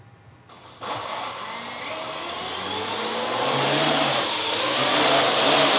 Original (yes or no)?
yes